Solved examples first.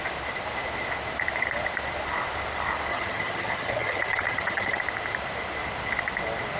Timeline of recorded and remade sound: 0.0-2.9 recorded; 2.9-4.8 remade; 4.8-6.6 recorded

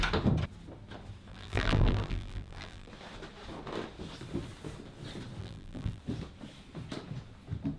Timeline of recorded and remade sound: 0.0-1.3 recorded; 1.3-2.9 remade; 2.9-5.4 recorded; 5.4-6.0 remade; 6.0-7.8 recorded

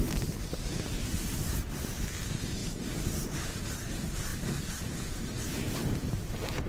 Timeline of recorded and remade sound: 0.0-2.6 recorded; 2.6-3.6 remade; 3.6-4.3 recorded; 4.3-4.8 remade; 4.8-5.8 recorded; 5.8-6.3 remade; 6.3-6.7 recorded

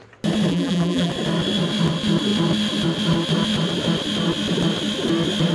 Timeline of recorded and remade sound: 0.0-0.5 recorded; 0.5-1.1 remade; 1.1-5.5 recorded

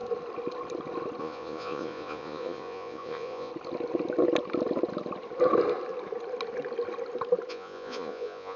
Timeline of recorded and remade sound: 0.0-1.2 recorded; 1.2-3.5 remade; 3.5-7.5 recorded; 7.5-8.6 remade

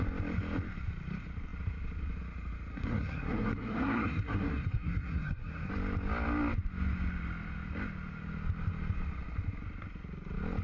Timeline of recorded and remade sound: 0.0-2.7 recorded; 2.7-5.7 remade; 5.7-10.6 recorded

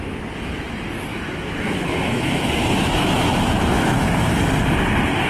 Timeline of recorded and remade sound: 0.0-1.1 recorded; 1.1-4.3 remade; 4.3-5.3 recorded

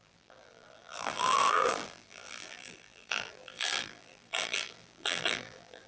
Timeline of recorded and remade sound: 0.0-5.9 remade